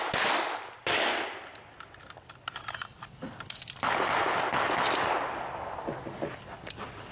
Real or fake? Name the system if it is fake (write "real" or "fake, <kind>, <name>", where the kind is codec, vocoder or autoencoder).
real